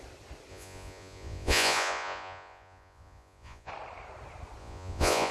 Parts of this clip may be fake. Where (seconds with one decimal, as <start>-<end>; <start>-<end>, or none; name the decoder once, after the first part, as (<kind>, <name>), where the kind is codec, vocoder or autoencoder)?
0.5-3.7 (vocoder, Vocos); 4.6-5.3